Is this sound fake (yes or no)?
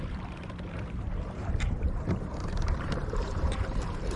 yes